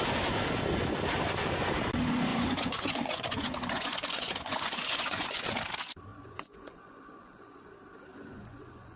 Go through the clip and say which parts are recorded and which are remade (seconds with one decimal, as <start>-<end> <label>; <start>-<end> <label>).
0.0-2.3 recorded; 2.3-5.4 remade; 5.4-6.1 recorded; 6.1-7.7 remade; 7.7-8.1 recorded; 8.1-9.0 remade